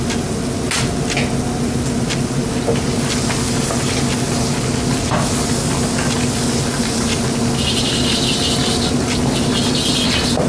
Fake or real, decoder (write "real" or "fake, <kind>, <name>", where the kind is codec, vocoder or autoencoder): real